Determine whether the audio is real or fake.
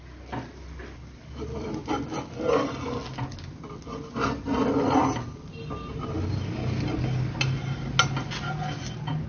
real